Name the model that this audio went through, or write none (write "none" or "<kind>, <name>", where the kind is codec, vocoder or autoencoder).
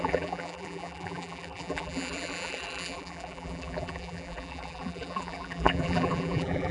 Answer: vocoder, BigVGAN v2